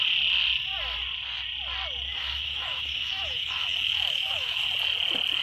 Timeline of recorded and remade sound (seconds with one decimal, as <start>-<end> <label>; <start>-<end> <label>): 0.0-2.1 recorded; 2.1-4.6 remade; 4.6-5.4 recorded